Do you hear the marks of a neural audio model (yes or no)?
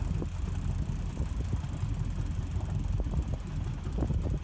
no